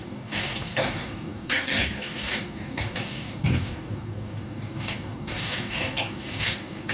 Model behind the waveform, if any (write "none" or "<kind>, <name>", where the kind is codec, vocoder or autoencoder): codec, DAC